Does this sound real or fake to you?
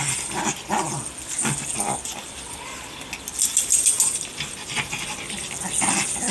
real